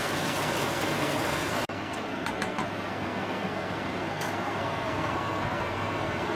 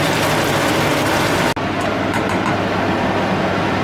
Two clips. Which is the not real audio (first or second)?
first